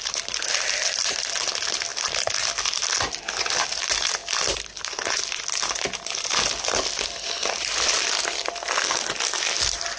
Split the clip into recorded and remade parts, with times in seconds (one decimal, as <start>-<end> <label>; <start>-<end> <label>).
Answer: 0.0-10.0 recorded